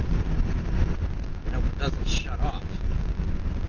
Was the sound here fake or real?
real